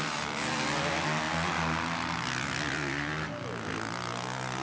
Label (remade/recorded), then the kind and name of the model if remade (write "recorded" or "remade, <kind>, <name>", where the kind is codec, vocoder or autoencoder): recorded